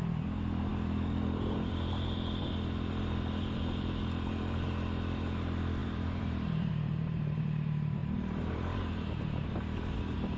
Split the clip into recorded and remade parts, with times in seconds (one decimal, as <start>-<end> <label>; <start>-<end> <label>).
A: 0.0-10.4 remade